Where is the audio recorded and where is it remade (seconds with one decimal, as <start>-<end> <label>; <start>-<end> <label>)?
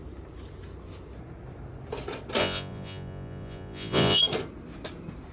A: 0.0-2.4 recorded; 2.4-4.2 remade; 4.2-5.3 recorded